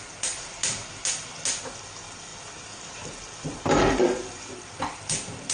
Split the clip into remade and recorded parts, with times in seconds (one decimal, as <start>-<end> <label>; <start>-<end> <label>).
0.0-5.5 recorded